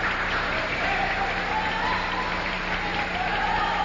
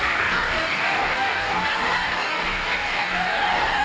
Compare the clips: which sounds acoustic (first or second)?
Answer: first